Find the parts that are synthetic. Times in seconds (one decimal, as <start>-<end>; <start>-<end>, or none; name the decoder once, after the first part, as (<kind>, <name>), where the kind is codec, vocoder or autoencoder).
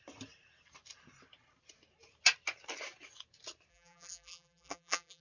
3.7-5.2 (vocoder, BigVGAN v2)